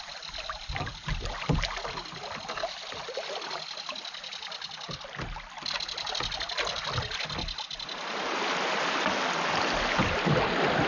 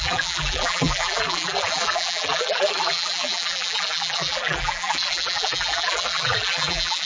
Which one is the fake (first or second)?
second